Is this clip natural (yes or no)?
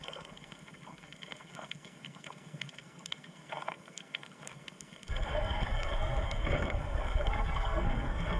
no